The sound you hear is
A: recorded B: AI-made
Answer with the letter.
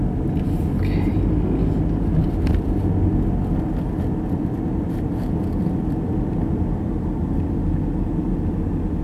A